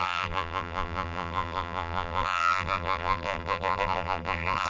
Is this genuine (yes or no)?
no